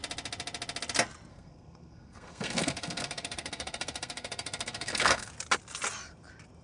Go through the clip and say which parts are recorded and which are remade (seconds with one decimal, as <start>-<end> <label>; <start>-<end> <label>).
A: 0.0-1.3 recorded; 1.3-5.3 remade; 5.3-6.6 recorded